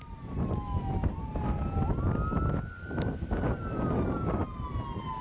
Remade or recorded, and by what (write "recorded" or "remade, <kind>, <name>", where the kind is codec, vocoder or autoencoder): recorded